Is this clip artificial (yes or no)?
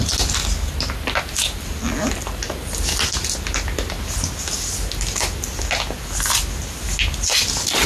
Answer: no